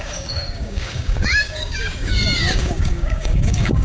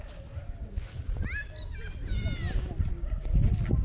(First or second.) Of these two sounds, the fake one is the first